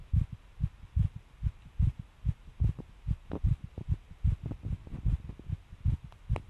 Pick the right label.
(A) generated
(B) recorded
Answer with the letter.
B